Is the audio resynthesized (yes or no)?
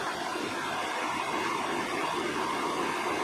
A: no